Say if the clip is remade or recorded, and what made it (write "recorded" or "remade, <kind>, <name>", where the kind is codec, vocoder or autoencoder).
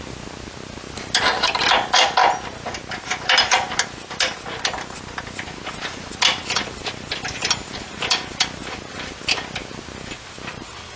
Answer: recorded